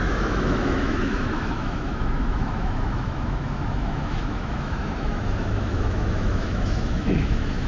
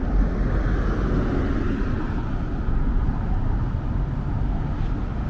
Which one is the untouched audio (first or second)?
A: second